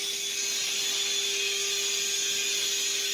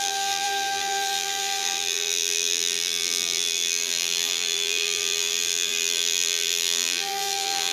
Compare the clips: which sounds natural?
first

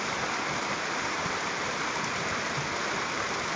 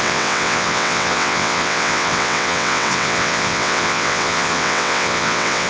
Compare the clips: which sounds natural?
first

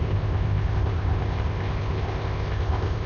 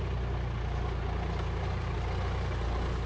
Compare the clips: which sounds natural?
second